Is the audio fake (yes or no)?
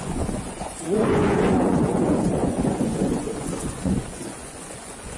yes